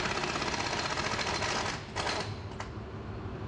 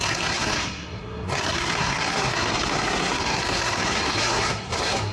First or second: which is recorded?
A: first